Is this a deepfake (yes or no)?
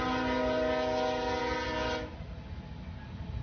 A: no